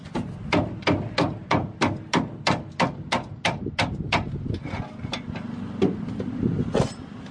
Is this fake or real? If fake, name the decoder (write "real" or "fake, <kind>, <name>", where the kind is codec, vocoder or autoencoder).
real